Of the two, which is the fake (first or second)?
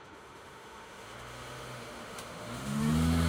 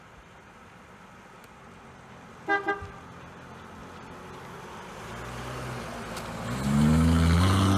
first